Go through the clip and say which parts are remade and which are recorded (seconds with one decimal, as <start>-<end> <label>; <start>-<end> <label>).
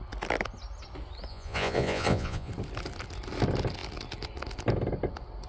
0.0-1.3 recorded; 1.3-2.5 remade; 2.5-5.5 recorded